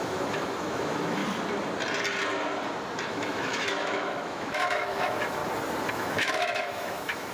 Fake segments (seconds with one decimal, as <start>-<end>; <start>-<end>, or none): 0.0-1.2; 3.1-5.4; 5.9-7.3